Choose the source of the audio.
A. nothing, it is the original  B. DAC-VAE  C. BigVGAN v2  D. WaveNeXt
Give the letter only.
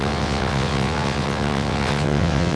D